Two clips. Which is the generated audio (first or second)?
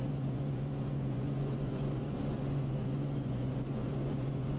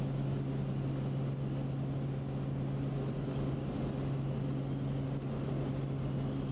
first